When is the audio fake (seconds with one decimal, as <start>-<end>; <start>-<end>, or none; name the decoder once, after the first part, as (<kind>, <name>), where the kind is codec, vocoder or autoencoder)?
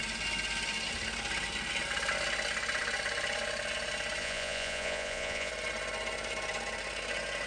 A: 4.2-5.5 (vocoder, Vocos)